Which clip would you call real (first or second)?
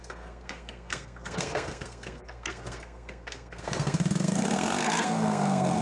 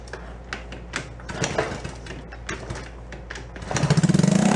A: second